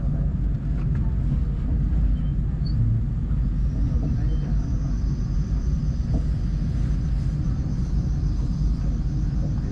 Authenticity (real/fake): real